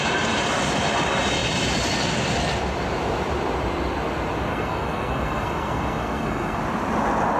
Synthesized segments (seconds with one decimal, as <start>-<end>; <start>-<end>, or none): 4.5-6.6